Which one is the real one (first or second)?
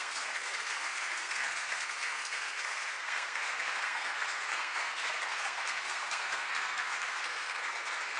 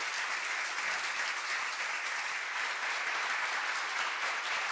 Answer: second